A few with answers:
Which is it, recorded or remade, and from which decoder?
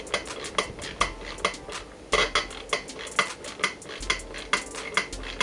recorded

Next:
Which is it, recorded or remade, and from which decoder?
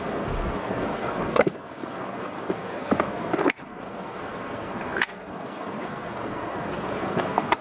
remade, codec, SNAC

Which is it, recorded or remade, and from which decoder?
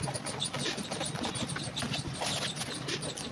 recorded